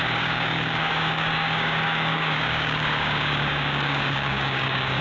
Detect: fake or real fake